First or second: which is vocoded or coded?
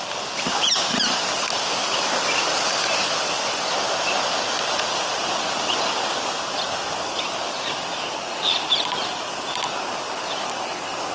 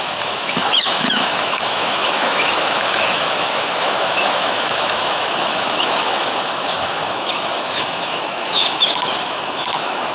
second